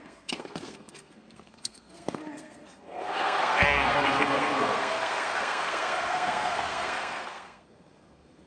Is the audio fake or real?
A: fake